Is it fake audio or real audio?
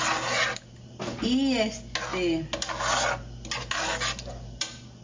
real